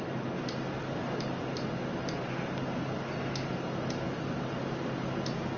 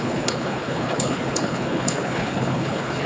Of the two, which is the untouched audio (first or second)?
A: first